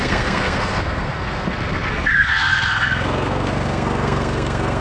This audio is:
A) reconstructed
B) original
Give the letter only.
A